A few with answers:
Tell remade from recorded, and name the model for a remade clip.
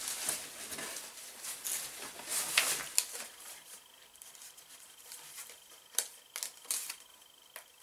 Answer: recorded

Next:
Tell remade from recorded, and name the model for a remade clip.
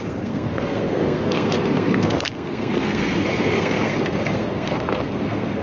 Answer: remade, codec, SNAC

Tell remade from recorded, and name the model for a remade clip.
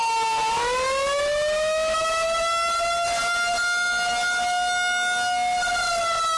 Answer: recorded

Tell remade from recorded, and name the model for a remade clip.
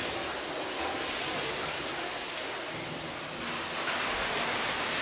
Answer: recorded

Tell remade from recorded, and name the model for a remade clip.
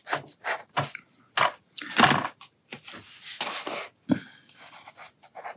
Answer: recorded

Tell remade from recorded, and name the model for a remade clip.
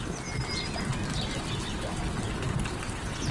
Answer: recorded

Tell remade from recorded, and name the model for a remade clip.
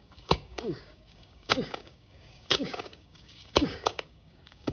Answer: remade, codec, DAC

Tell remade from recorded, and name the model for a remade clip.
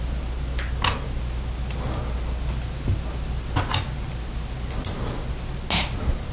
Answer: recorded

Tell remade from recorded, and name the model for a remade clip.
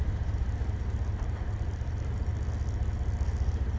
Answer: recorded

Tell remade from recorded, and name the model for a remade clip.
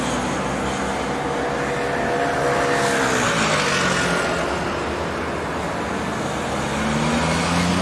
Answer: recorded